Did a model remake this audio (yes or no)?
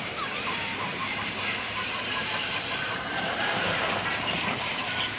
yes